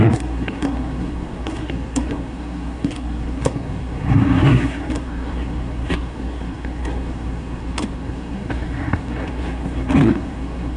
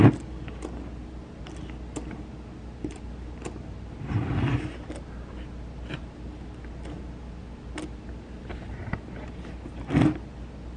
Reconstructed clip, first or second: first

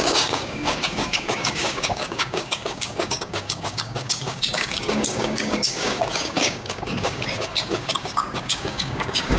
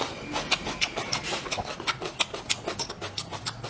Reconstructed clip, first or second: first